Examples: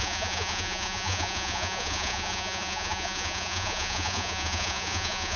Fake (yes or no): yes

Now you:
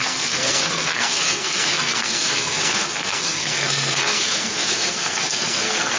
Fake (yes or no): yes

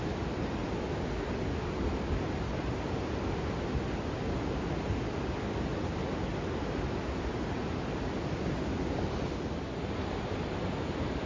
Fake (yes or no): no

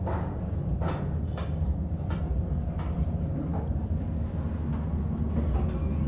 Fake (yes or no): no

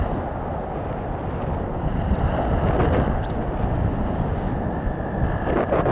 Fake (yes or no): no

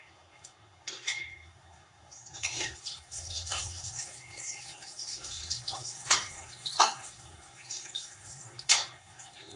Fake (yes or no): yes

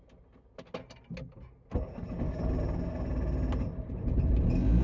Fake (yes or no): no